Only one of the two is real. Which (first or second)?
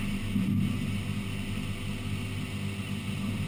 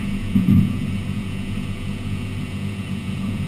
first